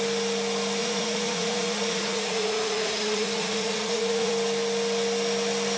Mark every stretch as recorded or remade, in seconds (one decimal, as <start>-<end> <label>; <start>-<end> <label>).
0.0-0.8 recorded; 0.8-4.3 remade; 4.3-5.8 recorded